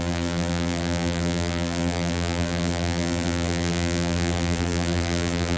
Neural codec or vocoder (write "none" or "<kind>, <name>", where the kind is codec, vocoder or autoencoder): vocoder, BigVGAN v2